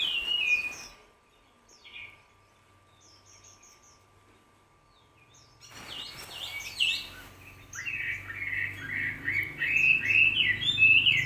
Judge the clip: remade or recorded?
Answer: recorded